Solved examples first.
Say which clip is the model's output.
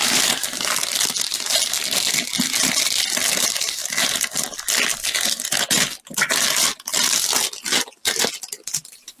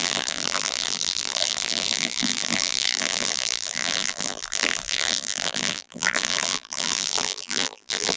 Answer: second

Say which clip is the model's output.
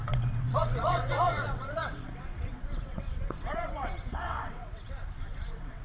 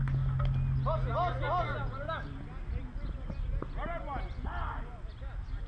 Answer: first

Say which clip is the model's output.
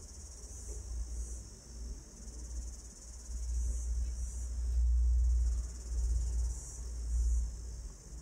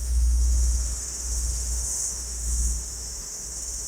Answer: second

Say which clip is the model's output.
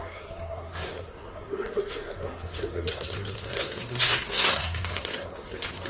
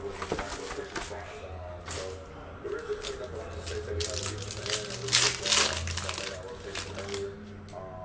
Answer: first